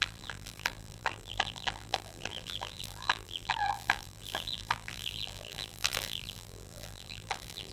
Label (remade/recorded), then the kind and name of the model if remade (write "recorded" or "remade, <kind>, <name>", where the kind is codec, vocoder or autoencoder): remade, vocoder, BigVGAN v2